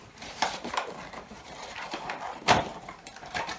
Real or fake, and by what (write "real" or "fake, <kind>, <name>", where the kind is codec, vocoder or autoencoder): fake, vocoder, BigVGAN v2